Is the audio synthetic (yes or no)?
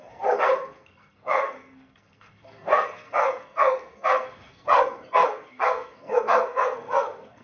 yes